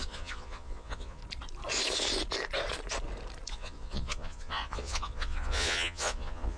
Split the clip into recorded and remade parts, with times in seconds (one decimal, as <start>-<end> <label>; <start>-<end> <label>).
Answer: 0.0-1.2 remade; 1.2-3.5 recorded; 3.5-6.6 remade